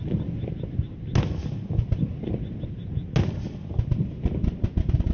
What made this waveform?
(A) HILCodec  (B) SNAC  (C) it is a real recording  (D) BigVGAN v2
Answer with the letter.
C